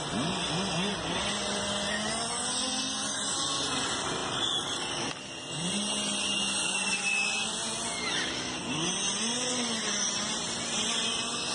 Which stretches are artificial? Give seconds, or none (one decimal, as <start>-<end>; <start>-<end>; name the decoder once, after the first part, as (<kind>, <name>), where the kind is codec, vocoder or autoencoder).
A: none

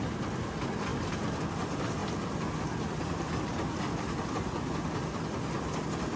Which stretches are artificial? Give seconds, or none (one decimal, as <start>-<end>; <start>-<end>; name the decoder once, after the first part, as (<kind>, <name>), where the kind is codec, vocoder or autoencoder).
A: none

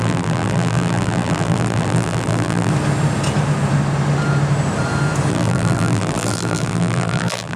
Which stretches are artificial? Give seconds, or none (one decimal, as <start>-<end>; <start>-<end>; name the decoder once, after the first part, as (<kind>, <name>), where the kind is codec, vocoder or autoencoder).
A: 0.0-2.7 (vocoder, BigVGAN v2); 5.3-7.6

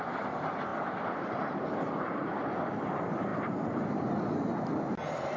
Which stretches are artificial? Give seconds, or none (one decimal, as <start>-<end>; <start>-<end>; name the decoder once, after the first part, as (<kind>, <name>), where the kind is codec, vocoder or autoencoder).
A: 0.7-2.0 (vocoder, BigVGAN v2); 3.3-3.8

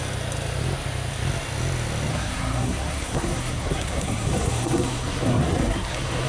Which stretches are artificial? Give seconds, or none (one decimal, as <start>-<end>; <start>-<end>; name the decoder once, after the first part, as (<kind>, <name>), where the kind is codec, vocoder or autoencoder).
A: 2.1-6.3 (codec, SNAC)

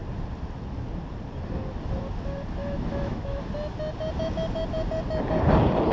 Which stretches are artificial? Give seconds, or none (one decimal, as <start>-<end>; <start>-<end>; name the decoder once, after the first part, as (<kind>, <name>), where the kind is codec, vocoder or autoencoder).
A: 2.6-3.4 (autoencoder, DAC-VAE)

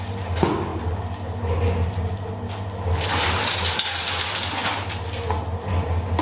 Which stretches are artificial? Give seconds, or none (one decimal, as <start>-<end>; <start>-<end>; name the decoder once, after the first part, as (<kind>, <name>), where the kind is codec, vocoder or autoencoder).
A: none

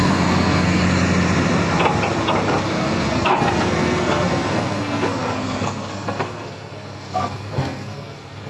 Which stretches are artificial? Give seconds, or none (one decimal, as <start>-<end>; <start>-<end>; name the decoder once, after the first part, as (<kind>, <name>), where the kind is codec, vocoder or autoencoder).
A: 0.0-0.8 (codec, SNAC); 2.6-8.5